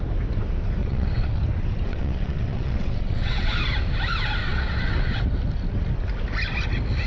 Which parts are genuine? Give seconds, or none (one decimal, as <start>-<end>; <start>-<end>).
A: 0.0-0.8; 1.4-1.9; 3.6-4.4; 5.2-7.1